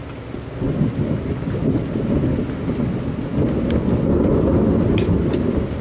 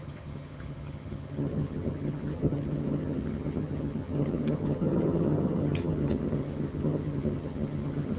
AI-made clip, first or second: second